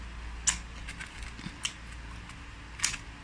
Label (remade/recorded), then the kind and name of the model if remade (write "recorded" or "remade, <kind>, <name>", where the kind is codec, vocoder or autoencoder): recorded